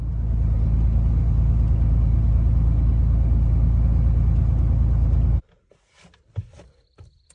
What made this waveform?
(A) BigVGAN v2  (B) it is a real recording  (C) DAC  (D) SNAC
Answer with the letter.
B